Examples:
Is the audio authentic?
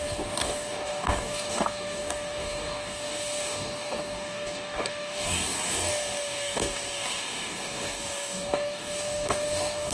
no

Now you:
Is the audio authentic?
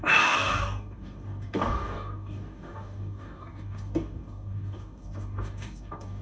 no